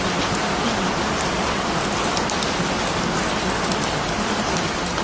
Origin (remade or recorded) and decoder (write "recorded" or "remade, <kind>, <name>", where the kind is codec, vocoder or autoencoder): recorded